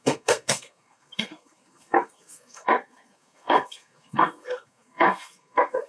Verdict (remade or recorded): remade